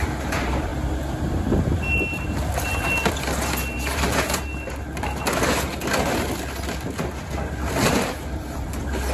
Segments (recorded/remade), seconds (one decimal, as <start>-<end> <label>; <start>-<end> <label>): 0.0-0.7 remade; 0.7-3.1 recorded; 3.1-4.5 remade; 4.5-8.2 recorded; 8.2-9.1 remade